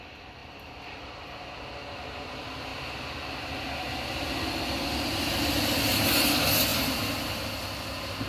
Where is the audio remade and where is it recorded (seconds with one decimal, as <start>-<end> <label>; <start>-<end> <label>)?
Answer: 0.0-8.3 recorded